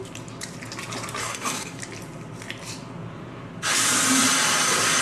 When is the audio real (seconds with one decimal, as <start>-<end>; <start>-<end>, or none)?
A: 0.0-1.2; 1.8-5.0